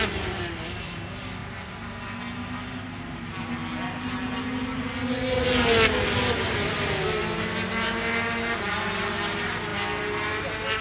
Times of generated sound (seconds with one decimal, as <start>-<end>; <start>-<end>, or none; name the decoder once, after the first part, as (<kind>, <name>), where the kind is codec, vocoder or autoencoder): none